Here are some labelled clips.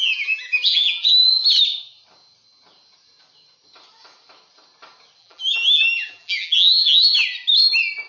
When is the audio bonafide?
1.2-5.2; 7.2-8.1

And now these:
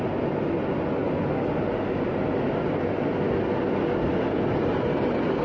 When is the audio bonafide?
0.0-5.4

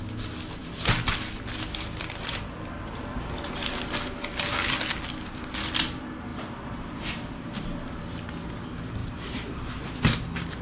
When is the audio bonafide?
0.0-6.3; 7.8-9.0; 10.0-10.6